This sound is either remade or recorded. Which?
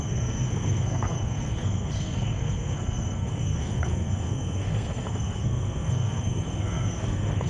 remade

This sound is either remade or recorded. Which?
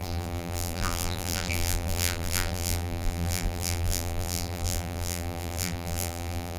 remade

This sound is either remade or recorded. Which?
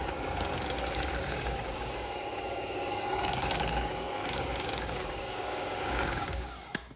remade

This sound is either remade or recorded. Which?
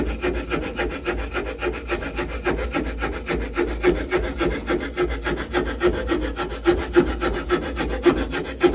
recorded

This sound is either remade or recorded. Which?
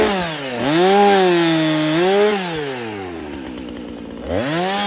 recorded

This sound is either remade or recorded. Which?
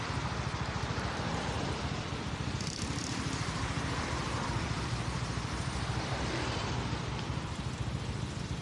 remade